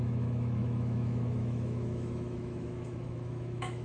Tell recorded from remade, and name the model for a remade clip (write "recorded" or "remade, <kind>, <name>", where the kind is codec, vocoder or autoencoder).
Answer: remade, autoencoder, DAC-VAE